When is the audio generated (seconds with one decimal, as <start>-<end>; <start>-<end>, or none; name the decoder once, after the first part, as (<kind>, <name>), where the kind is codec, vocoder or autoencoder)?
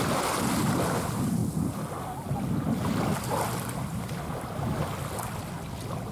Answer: none